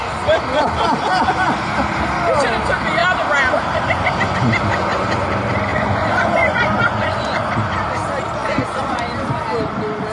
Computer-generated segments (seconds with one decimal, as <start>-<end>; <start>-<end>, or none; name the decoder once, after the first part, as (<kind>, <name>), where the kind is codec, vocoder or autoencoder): 5.7-7.5 (vocoder, Vocos); 8.4-9.0